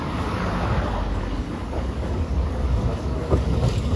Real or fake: fake